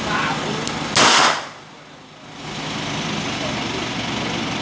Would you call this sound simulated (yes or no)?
no